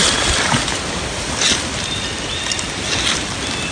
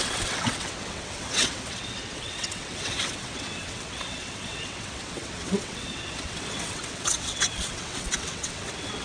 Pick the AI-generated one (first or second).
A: second